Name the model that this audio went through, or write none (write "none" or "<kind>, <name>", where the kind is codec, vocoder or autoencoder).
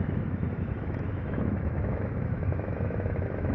autoencoder, DAC-VAE